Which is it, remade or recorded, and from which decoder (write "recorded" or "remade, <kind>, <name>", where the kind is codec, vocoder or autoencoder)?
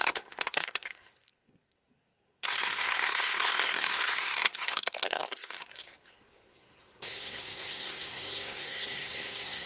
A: remade, codec, SNAC